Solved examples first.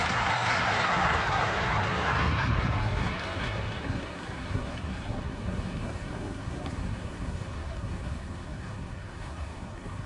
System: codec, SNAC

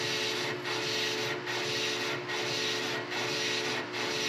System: none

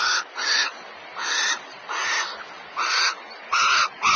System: none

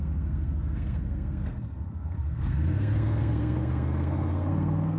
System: codec, SNAC